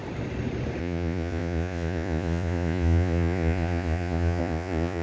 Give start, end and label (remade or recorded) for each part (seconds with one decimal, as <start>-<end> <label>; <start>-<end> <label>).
0.0-0.8 recorded; 0.8-5.0 remade